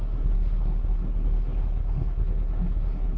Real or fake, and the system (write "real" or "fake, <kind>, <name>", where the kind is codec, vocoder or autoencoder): fake, codec, SNAC